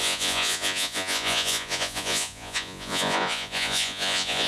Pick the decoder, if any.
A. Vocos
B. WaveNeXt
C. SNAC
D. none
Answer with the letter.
A